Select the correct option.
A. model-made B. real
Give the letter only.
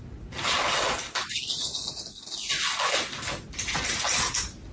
B